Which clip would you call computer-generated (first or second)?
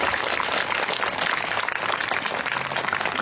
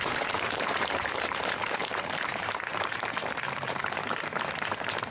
second